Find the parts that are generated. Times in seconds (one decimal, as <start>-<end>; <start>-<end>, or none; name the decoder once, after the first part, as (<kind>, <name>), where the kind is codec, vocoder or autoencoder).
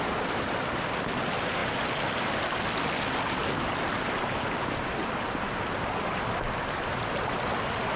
none